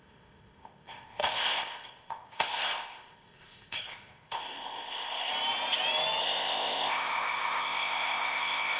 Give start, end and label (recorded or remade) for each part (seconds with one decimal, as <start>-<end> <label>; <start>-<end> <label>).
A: 0.0-5.3 remade; 5.3-6.2 recorded; 6.2-8.8 remade